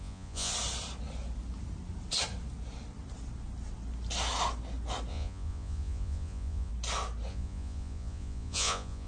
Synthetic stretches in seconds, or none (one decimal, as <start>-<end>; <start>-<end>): 0.0-0.5; 5.1-6.7; 7.3-9.1